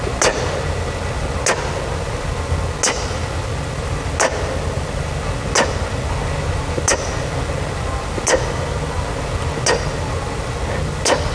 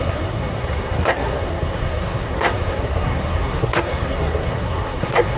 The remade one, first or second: second